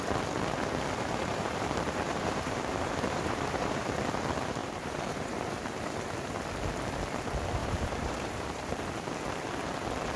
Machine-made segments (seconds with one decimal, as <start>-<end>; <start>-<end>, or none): 1.3-4.0; 4.6-5.5; 7.6-8.7